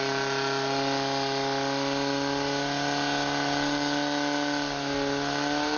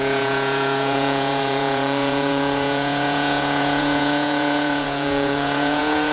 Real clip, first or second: first